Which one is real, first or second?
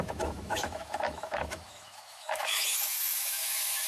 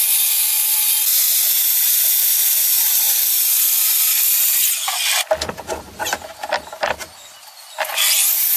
second